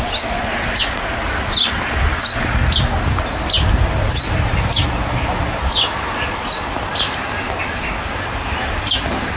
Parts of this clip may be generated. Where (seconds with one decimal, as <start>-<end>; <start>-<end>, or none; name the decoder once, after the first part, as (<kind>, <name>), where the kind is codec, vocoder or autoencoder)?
none